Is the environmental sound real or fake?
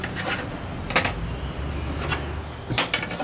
real